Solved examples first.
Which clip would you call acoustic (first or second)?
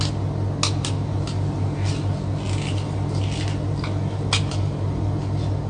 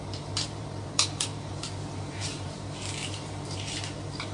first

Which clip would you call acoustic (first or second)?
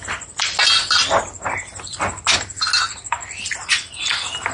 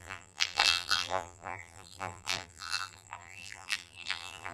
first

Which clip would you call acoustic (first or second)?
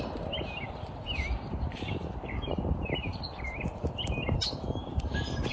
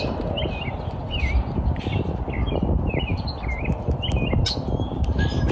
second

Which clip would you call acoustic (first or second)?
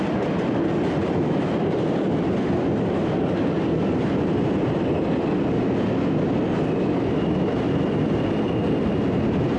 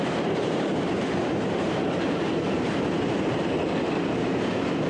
first